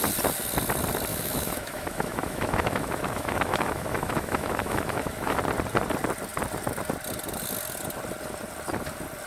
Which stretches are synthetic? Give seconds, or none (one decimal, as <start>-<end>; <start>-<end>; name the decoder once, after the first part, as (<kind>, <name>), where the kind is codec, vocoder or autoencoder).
1.1-5.4 (autoencoder, DAC-VAE)